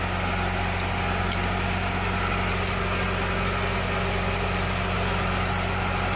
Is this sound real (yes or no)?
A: yes